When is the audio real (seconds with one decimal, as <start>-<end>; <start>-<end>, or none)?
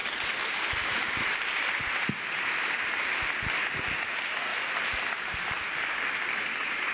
0.0-6.9